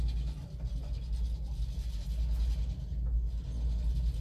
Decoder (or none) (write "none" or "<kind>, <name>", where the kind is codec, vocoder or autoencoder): none